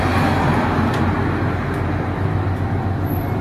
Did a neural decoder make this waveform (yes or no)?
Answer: no